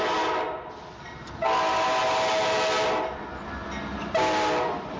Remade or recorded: recorded